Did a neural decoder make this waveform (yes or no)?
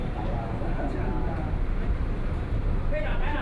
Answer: yes